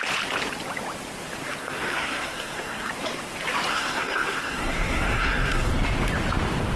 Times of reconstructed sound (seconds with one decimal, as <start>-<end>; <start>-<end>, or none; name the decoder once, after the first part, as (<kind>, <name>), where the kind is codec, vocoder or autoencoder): 1.6-2.9 (codec, SNAC); 3.7-5.7